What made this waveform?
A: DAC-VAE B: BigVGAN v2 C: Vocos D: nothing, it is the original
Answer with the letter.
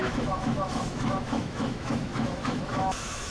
A